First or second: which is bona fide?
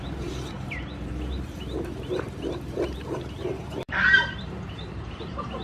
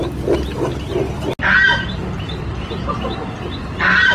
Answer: second